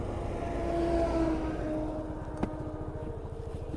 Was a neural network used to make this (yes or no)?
no